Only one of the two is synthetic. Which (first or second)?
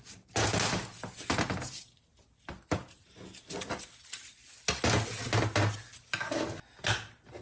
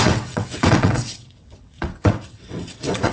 second